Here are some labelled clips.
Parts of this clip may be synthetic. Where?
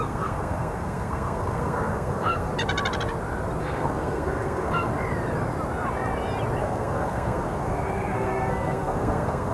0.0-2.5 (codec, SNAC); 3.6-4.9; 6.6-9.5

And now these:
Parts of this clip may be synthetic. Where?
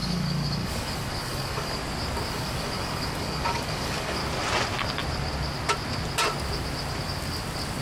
0.0-1.8 (codec, DAC); 2.3-4.2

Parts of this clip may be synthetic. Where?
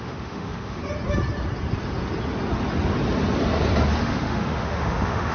0.0-0.8 (autoencoder, DAC-VAE); 4.0-5.3